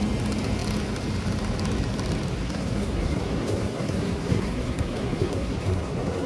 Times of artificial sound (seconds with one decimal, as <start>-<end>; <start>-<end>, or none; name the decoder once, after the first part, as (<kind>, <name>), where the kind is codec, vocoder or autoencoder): 2.4-6.3 (codec, SNAC)

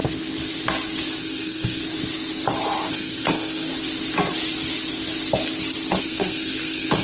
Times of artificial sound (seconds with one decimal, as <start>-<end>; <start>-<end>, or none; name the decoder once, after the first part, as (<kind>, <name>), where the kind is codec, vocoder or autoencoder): 1.2-1.8 (codec, SNAC); 2.9-3.7; 6.0-7.0

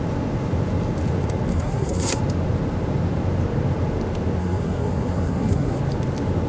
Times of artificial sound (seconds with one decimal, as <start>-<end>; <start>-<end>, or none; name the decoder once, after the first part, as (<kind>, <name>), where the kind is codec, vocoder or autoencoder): 1.5-2.2 (codec, SNAC); 4.4-5.8